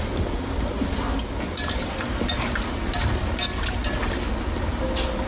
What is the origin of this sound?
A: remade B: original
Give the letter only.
B